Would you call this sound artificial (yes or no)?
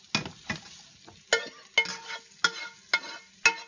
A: no